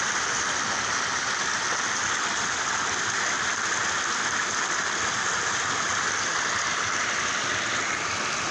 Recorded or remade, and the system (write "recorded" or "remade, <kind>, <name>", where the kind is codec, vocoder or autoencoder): recorded